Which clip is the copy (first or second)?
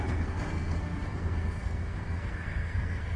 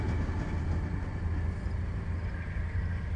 first